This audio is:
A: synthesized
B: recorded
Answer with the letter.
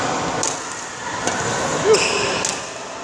B